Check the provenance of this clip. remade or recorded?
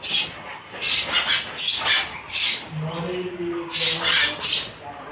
recorded